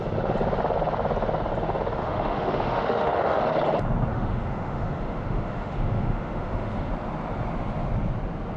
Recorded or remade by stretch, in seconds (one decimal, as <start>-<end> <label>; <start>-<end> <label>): 0.0-2.0 recorded; 2.0-3.4 remade; 3.4-4.1 recorded; 4.1-6.9 remade; 6.9-8.6 recorded